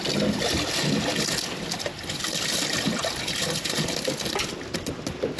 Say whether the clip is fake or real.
real